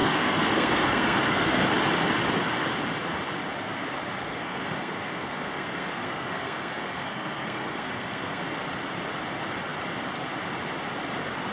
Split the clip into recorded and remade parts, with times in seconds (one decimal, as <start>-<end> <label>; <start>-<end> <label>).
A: 0.0-1.7 remade; 1.7-4.2 recorded; 4.2-8.4 remade; 8.4-11.5 recorded